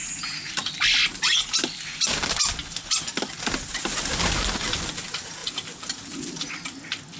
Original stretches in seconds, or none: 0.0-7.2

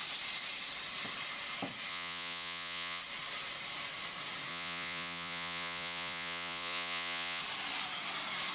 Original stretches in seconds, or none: 0.0-1.9; 3.0-4.5; 7.4-8.5

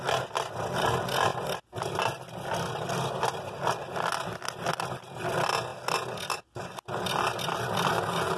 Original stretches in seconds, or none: 0.0-8.4

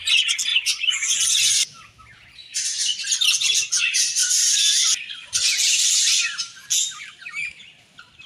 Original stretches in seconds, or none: 0.0-0.5; 1.8-8.3

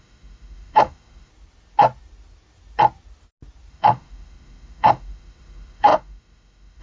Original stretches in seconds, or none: 1.3-3.7

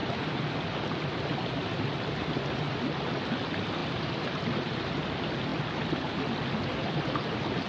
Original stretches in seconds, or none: 0.5-3.8; 4.9-5.5; 6.1-7.7